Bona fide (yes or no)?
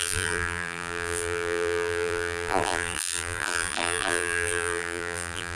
no